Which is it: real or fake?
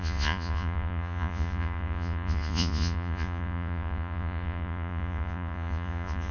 fake